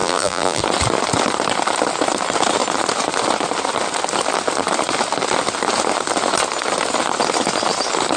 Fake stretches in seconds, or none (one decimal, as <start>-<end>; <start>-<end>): 0.0-0.6